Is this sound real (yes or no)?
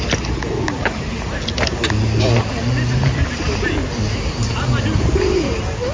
yes